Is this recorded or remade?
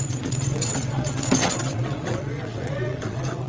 remade